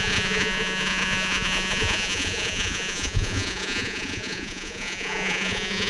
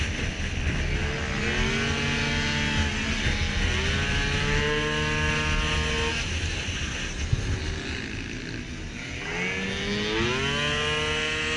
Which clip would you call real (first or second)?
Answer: second